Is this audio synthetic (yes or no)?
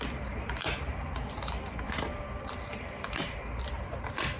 yes